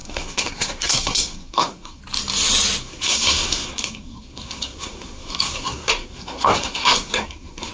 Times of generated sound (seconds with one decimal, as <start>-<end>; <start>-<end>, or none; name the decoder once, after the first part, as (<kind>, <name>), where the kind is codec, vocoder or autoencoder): 0.0-2.0 (codec, SNAC); 2.8-7.7